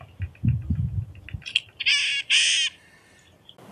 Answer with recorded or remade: recorded